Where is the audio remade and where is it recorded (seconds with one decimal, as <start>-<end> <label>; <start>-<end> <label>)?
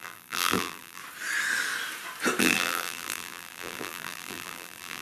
0.0-1.0 remade; 1.0-2.4 recorded; 2.4-5.0 remade